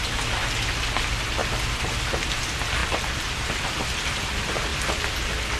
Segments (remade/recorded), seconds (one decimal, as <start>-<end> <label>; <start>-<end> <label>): 0.0-5.6 recorded